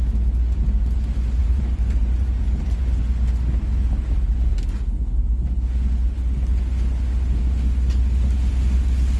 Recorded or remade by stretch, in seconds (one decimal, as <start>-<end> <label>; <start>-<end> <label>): 0.0-1.4 recorded; 1.4-2.8 remade; 2.8-9.2 recorded